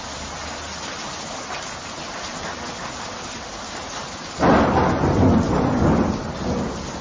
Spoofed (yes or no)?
no